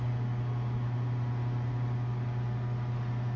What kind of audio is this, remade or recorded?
recorded